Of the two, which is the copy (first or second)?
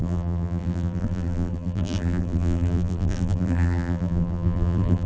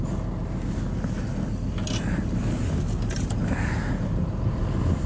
first